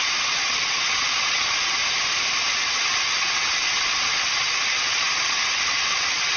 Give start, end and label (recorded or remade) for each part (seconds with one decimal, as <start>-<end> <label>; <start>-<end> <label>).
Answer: 0.0-1.8 remade; 1.8-2.5 recorded; 2.5-6.4 remade